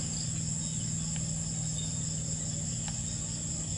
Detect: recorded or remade recorded